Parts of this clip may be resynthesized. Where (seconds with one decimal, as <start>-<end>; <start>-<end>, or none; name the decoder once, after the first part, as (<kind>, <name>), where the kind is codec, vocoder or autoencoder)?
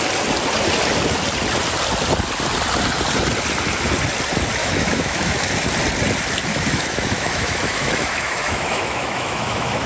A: 4.6-5.5 (autoencoder, DAC-VAE); 6.5-9.9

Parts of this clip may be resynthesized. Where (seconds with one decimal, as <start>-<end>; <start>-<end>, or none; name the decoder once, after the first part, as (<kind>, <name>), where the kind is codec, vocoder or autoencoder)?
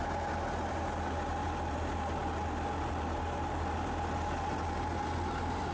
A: none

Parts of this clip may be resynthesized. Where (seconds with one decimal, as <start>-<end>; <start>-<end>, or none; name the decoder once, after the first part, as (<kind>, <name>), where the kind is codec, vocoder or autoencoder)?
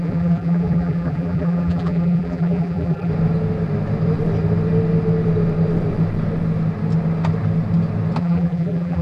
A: 0.0-3.1 (vocoder, BigVGAN v2); 8.2-9.0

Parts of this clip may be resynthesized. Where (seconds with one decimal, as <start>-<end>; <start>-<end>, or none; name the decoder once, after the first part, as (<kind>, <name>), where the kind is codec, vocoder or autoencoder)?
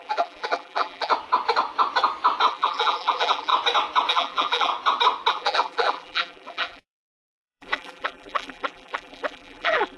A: 0.0-1.1 (vocoder, BigVGAN v2); 2.5-3.5; 4.1-4.7; 5.3-10.0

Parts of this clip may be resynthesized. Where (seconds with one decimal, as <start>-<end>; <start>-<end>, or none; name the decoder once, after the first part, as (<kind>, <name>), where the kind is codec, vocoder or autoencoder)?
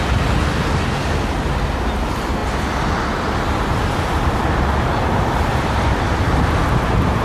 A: none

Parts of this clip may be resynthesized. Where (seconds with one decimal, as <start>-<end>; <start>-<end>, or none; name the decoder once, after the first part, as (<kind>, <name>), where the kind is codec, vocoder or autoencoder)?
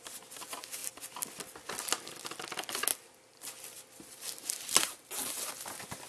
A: 2.9-5.5 (vocoder, BigVGAN v2)